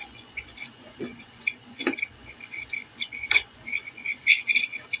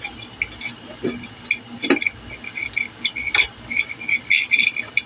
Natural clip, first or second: second